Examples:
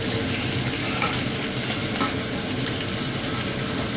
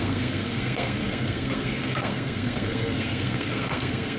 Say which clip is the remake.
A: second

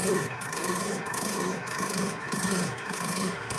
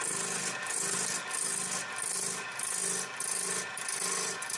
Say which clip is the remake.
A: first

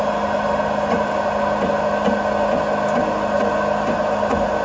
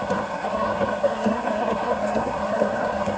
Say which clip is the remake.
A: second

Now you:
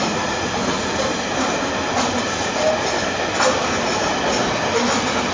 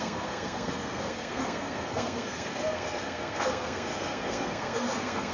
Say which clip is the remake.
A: second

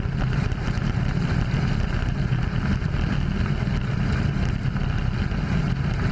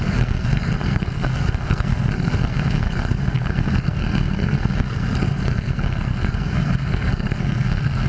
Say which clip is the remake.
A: second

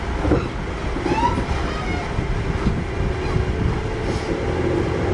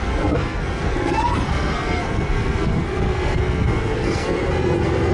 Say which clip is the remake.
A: second